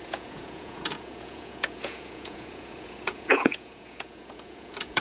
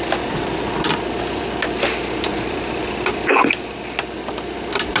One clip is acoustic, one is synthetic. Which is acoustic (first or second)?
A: second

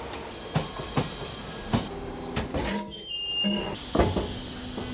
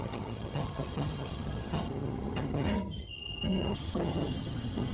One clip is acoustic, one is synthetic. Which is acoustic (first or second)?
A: first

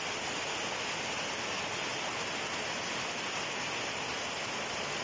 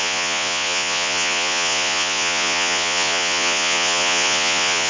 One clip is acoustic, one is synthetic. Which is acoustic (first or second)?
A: first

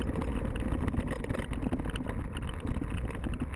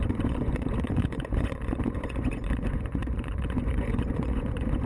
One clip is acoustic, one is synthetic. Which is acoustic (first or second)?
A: first